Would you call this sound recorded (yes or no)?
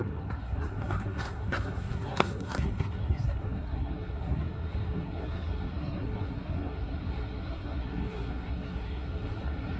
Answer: no